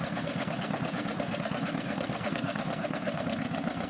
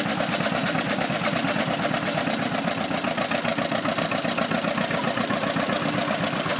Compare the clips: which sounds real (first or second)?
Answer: second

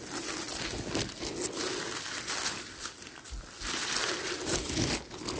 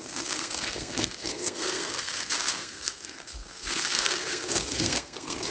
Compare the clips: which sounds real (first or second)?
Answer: first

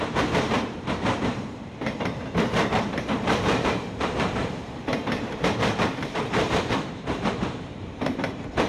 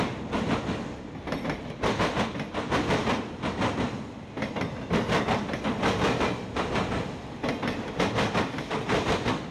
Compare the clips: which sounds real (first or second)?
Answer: second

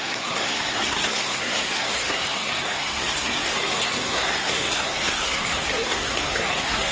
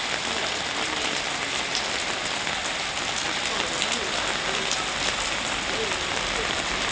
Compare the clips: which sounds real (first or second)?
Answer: second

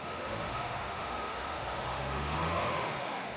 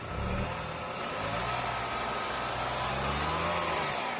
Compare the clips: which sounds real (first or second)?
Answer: second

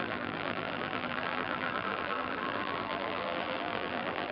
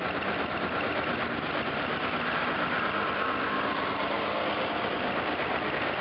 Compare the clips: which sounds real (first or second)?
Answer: second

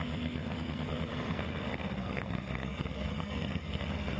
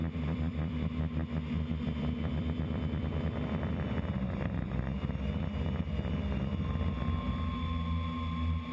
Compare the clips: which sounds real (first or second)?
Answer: second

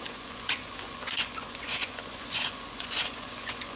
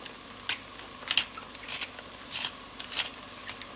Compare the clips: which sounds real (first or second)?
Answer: second